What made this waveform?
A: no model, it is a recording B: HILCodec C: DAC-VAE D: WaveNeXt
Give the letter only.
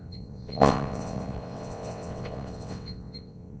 D